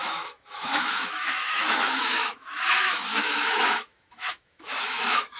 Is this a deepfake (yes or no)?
yes